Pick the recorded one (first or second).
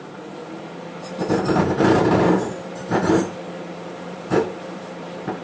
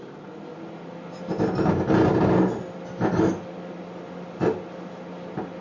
second